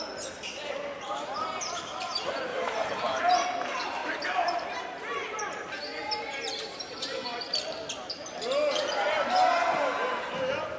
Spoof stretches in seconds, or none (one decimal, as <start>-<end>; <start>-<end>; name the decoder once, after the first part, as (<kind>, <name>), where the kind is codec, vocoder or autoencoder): 2.5-3.2 (vocoder, BigVGAN v2); 4.0-7.9